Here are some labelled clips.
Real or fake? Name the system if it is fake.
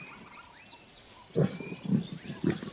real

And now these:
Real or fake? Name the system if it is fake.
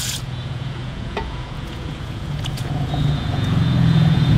fake, vocoder, Vocos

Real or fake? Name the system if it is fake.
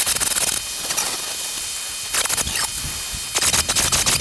real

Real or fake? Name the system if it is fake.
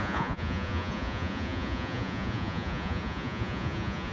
fake, vocoder, Vocos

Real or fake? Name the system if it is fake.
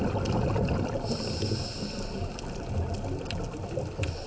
real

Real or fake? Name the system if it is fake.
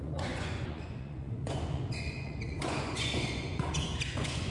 fake, vocoder, Vocos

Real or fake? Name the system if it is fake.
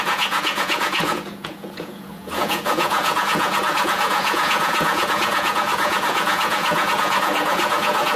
fake, vocoder, Vocos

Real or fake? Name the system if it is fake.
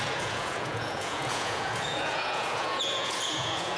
fake, vocoder, Vocos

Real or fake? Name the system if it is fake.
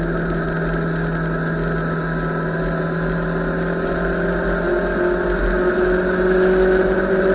real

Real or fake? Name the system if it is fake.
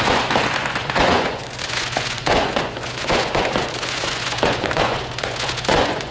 fake, vocoder, Vocos